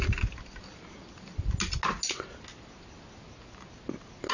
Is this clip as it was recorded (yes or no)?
yes